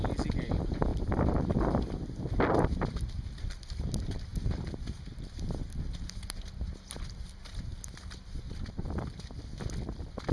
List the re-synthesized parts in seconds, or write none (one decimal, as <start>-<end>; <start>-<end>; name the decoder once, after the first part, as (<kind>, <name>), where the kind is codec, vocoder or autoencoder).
none